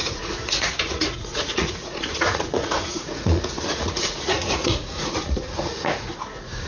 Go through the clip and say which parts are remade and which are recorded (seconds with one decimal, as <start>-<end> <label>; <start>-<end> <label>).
0.0-6.7 remade